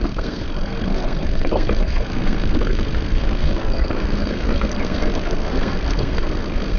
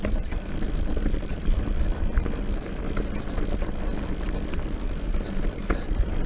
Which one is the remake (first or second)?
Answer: first